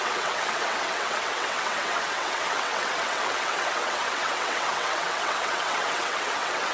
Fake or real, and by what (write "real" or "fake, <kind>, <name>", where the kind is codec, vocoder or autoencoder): fake, vocoder, WaveNeXt